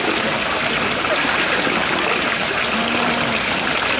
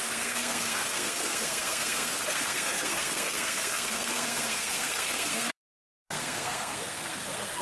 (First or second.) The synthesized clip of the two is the second